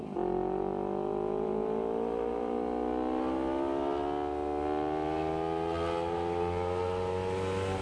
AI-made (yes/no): no